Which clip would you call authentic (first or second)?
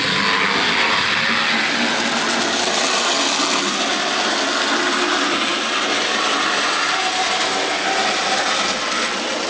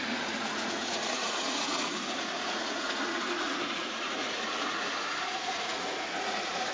first